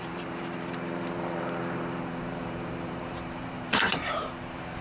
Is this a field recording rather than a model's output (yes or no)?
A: no